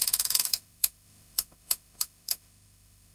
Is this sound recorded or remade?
remade